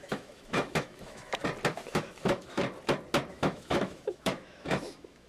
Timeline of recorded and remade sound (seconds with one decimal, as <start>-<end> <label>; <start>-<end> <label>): 0.0-1.4 remade; 1.4-1.9 recorded; 1.9-2.6 remade; 2.6-3.3 recorded; 3.3-5.3 remade